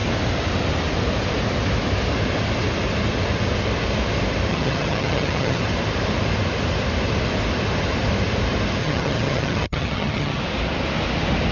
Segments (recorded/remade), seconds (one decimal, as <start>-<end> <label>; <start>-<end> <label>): 0.0-4.5 recorded; 4.5-5.6 remade; 5.6-8.8 recorded; 8.8-10.4 remade; 10.4-11.5 recorded